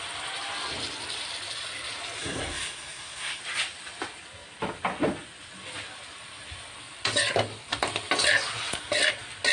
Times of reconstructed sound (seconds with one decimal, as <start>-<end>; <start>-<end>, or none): 2.2-3.4